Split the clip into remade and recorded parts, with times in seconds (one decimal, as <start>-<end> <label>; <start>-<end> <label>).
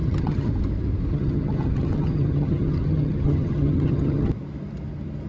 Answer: 0.0-0.5 remade; 0.5-1.1 recorded; 1.1-4.3 remade; 4.3-5.3 recorded